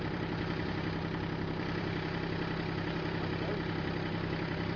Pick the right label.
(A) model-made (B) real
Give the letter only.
A